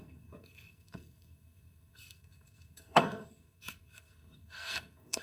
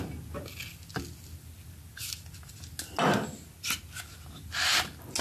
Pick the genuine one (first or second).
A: second